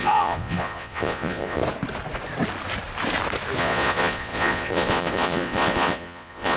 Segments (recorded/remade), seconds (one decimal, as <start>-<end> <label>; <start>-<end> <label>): 0.0-1.6 remade; 1.6-3.6 recorded; 3.6-6.6 remade